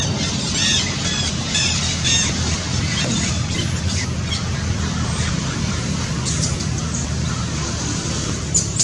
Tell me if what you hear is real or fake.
real